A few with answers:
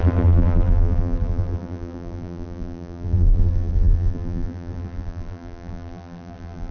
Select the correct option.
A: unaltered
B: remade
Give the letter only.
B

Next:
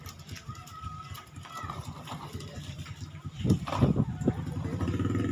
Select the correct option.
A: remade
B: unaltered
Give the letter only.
B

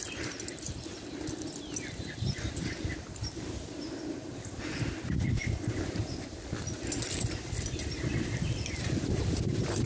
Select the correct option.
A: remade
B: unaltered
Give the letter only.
B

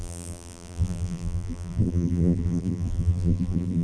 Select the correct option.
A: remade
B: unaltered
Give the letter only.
A